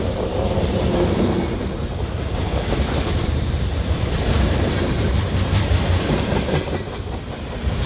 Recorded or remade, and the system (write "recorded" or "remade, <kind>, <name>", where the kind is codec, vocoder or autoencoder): remade, vocoder, BigVGAN v2